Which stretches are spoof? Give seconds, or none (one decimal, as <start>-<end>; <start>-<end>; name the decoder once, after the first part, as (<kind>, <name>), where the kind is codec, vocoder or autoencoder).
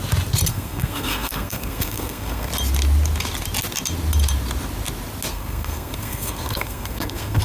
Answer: 0.5-2.5 (codec, SNAC); 5.3-7.4